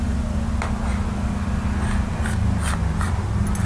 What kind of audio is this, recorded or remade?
recorded